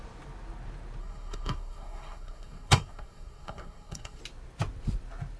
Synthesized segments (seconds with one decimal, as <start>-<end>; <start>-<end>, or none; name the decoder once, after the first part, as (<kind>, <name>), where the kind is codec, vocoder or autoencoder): 1.0-4.2 (codec, SNAC)